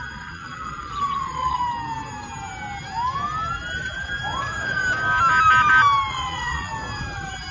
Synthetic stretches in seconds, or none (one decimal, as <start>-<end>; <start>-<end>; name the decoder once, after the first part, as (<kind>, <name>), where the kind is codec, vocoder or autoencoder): 0.0-1.6 (vocoder, Vocos); 6.1-6.7